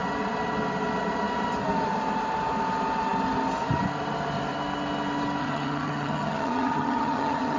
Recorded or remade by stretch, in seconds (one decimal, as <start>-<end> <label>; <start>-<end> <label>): 0.0-5.4 recorded; 5.4-7.6 remade